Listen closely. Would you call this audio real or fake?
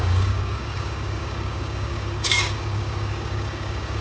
fake